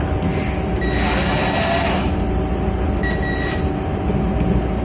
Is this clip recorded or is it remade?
recorded